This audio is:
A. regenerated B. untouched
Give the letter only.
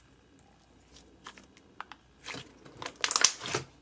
B